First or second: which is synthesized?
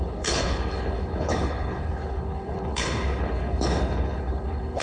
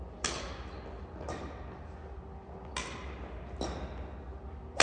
first